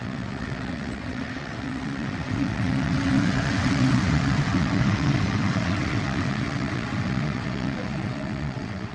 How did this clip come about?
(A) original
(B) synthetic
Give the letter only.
B